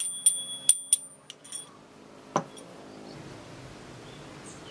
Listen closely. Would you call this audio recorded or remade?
recorded